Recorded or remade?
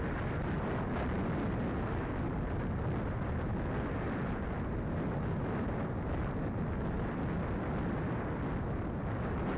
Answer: recorded